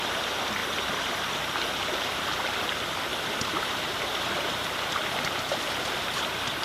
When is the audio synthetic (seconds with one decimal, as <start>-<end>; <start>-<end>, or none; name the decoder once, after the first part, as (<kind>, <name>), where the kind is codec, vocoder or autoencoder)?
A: 3.1-4.3 (vocoder, BigVGAN v2)